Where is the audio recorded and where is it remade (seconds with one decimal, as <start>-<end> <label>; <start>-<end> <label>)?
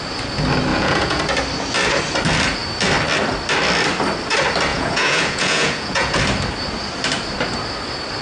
0.0-0.7 recorded; 0.7-1.2 remade; 1.2-4.7 recorded; 4.7-6.2 remade; 6.2-8.2 recorded